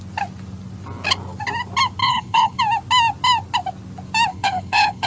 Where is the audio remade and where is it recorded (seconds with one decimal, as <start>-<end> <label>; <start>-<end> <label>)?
0.0-2.0 recorded; 2.0-2.6 remade; 2.6-4.3 recorded; 4.3-5.1 remade